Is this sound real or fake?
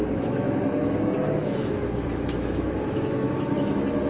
fake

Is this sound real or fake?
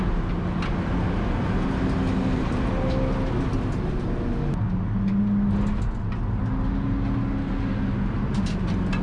real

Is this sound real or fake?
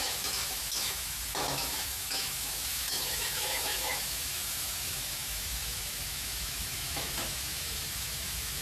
fake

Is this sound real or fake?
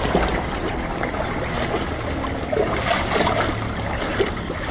real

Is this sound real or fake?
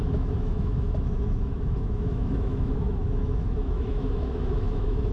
fake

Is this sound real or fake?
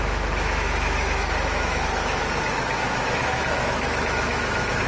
fake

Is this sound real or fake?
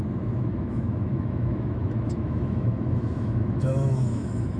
fake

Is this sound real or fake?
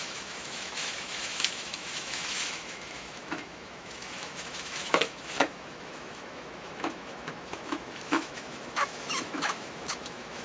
fake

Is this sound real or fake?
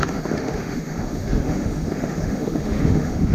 fake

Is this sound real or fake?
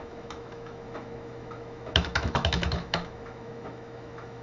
fake